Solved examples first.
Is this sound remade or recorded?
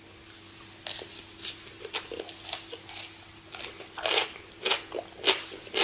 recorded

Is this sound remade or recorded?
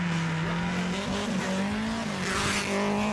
recorded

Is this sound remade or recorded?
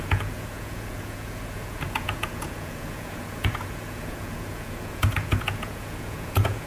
remade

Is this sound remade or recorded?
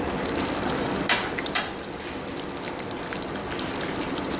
recorded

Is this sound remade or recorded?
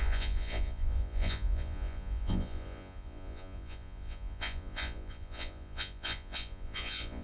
remade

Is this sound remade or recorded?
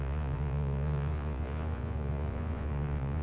remade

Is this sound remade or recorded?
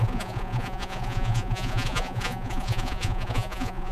remade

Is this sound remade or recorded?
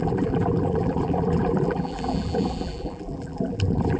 remade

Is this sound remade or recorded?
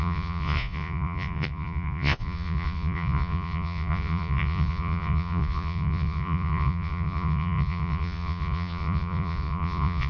remade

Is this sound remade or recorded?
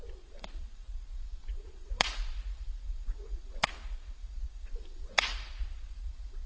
remade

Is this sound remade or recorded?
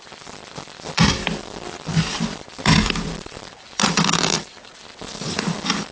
remade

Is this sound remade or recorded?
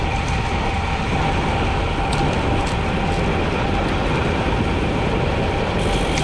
recorded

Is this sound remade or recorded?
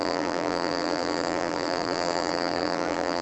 remade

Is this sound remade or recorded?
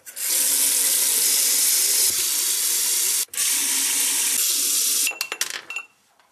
recorded